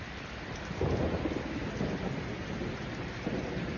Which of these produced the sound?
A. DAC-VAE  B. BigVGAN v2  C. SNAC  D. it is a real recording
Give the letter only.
D